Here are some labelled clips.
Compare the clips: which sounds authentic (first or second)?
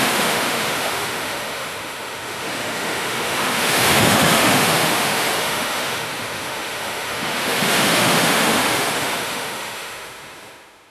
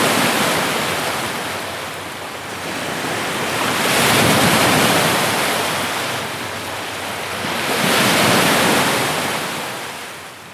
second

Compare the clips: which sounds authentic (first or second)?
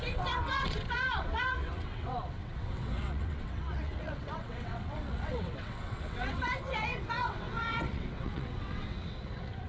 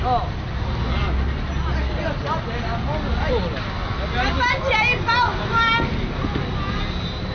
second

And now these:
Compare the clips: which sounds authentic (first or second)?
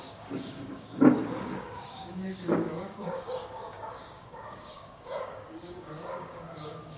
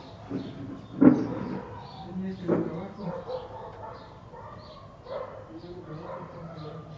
second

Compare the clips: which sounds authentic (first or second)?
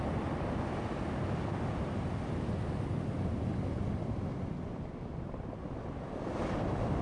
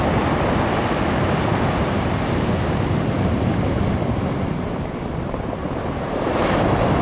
first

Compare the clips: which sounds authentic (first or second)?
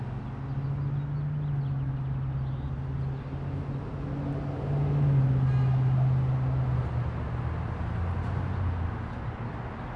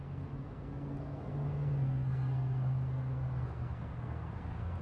first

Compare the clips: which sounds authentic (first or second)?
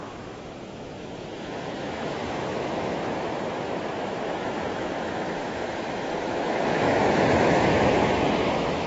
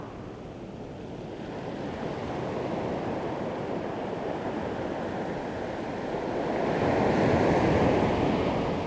second